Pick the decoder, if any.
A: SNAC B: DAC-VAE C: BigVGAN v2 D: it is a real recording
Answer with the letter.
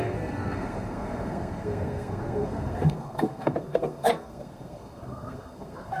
A